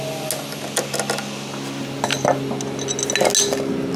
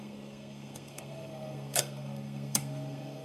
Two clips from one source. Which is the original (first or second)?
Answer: first